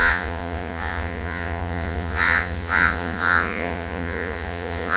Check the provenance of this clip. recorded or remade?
remade